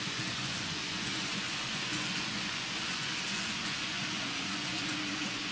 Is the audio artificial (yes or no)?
yes